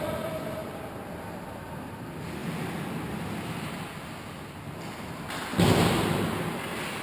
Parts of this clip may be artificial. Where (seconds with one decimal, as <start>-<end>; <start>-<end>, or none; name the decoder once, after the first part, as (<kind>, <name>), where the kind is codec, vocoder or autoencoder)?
none